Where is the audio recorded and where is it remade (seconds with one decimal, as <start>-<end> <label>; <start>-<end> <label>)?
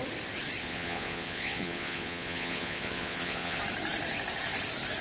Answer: 0.0-0.6 recorded; 0.6-3.6 remade; 3.6-5.0 recorded